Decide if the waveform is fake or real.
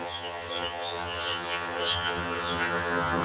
fake